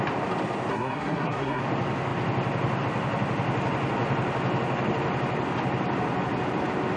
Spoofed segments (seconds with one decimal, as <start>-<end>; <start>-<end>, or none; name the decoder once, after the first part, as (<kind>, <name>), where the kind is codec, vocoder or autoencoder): 0.7-1.6 (codec, SNAC)